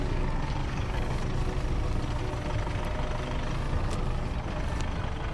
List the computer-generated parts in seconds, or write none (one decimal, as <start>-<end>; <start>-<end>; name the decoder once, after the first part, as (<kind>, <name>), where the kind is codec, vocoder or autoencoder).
0.6-1.2 (codec, DAC)